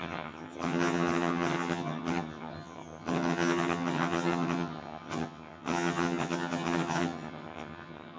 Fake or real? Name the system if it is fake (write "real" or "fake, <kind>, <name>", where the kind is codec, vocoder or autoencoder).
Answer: fake, vocoder, HiFi-GAN